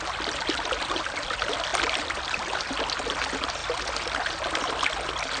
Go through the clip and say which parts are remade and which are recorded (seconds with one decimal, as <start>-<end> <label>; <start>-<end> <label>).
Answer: 0.0-1.7 recorded; 1.7-2.7 remade; 2.7-5.4 recorded